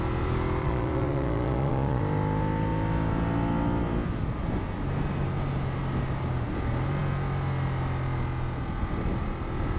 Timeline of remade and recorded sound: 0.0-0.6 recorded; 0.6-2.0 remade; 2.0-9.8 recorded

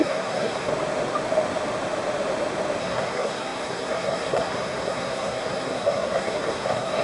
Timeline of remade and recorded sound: 0.0-0.7 remade; 0.7-2.8 recorded; 2.8-7.0 remade

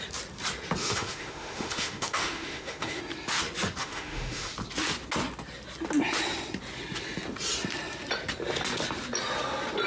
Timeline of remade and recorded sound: 0.0-0.8 recorded; 0.8-3.0 remade; 3.0-3.8 recorded; 3.8-4.5 remade; 4.5-9.9 recorded

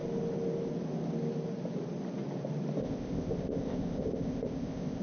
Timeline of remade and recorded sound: 0.0-2.8 recorded; 2.8-5.0 remade

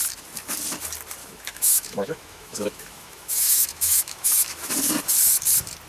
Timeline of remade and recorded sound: 0.0-1.2 recorded; 1.2-4.7 remade; 4.7-5.9 recorded